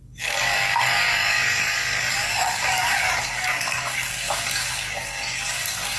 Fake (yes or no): yes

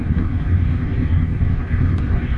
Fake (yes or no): yes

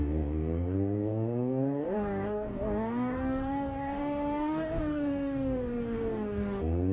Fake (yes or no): yes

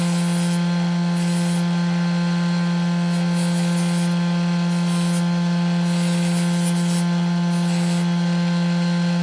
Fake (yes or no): no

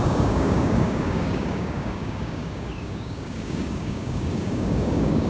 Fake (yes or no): yes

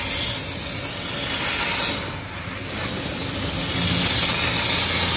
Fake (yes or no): no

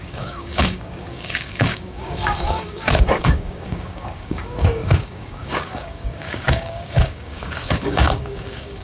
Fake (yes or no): yes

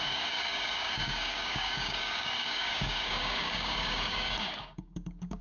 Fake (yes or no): yes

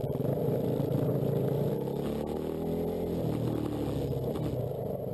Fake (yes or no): no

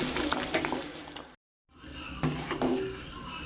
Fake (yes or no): no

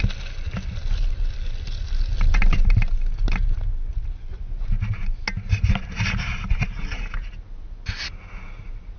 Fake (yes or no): no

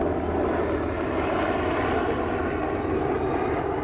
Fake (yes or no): no